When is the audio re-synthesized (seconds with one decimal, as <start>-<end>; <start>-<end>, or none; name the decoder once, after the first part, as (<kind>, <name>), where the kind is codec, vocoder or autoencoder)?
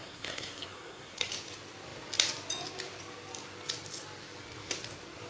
0.0-1.3 (codec, SNAC)